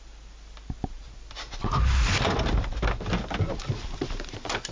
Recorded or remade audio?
recorded